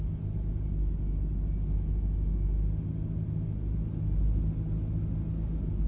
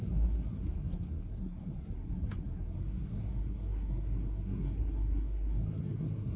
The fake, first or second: second